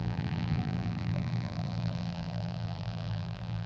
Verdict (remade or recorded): remade